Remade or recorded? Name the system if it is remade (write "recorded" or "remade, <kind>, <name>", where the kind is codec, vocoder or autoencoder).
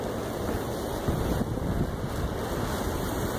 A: recorded